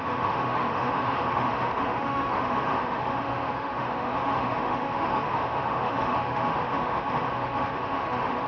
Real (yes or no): no